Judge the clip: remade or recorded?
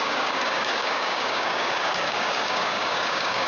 remade